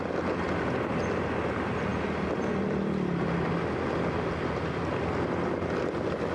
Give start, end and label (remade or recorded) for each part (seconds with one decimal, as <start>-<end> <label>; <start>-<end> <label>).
0.0-6.3 recorded